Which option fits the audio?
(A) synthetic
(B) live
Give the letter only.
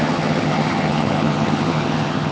A